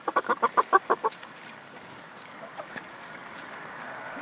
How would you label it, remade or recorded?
remade